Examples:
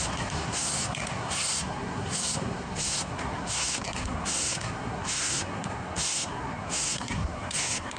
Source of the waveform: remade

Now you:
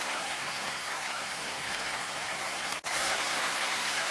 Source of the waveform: remade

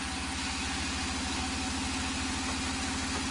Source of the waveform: recorded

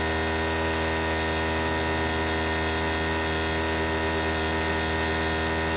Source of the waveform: recorded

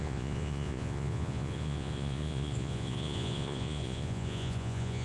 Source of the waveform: remade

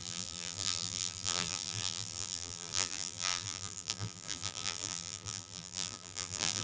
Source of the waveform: remade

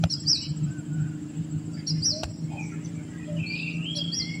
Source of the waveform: recorded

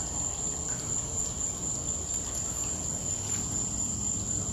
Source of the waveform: recorded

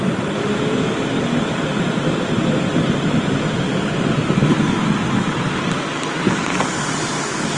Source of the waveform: recorded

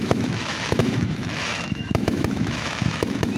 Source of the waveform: remade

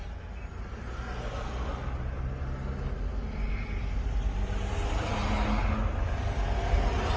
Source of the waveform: recorded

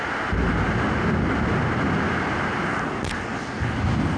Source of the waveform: recorded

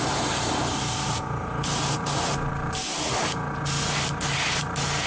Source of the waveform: recorded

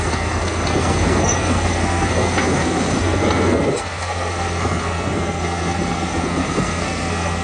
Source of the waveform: remade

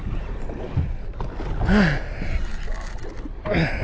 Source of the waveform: recorded